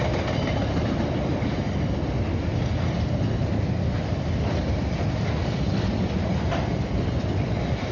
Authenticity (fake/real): real